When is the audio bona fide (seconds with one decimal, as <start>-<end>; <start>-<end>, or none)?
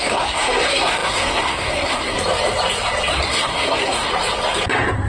2.2-3.1; 4.1-5.1